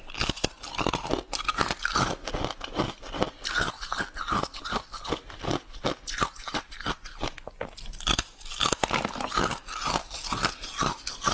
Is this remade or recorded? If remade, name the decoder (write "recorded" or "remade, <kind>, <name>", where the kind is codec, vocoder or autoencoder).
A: recorded